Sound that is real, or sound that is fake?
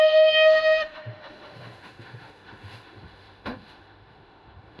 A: fake